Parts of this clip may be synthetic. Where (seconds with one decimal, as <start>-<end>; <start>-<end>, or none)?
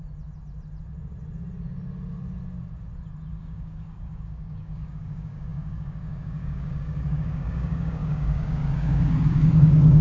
3.3-10.0